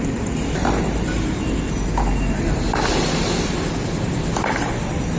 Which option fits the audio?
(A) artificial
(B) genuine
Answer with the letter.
B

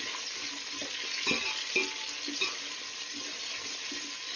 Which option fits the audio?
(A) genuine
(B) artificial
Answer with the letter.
A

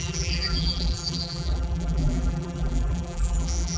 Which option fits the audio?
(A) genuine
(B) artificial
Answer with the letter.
B